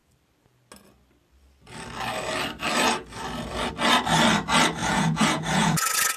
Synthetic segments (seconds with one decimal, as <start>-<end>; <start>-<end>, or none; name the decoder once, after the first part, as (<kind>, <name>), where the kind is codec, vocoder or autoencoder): 4.8-6.2 (vocoder, Vocos)